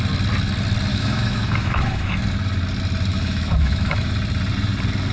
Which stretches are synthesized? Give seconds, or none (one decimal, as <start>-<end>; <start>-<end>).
0.9-2.1; 3.1-4.1